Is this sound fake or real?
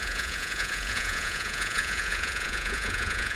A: fake